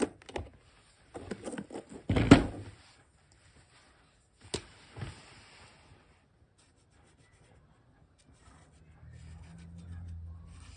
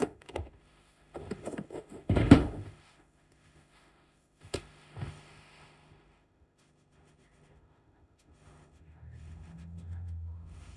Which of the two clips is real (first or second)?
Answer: first